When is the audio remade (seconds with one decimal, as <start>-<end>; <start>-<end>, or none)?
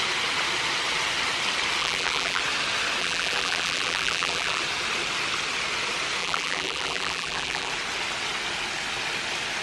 1.8-2.4; 3.0-4.6; 6.2-7.7